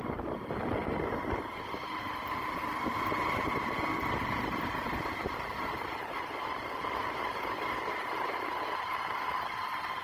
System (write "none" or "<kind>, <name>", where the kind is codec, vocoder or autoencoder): none